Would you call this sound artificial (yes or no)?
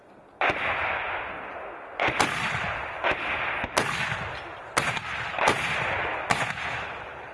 no